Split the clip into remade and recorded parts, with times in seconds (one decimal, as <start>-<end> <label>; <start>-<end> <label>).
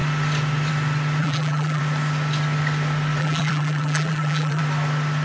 0.0-1.2 recorded; 1.2-1.8 remade; 1.8-3.2 recorded; 3.2-4.6 remade; 4.6-5.2 recorded